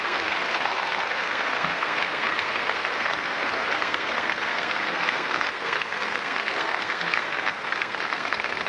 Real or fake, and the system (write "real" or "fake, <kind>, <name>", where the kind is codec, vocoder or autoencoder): fake, codec, SNAC